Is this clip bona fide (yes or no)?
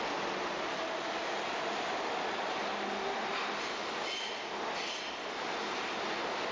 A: yes